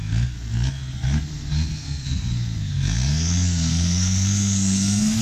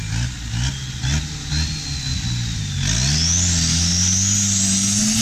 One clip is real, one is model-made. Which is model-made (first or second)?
first